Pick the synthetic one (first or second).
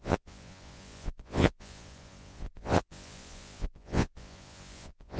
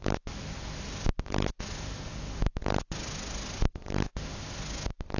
first